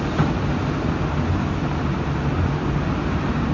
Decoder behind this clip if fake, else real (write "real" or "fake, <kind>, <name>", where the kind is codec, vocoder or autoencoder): real